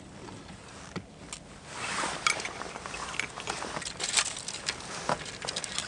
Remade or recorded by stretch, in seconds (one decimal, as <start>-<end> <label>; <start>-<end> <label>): 0.0-5.9 recorded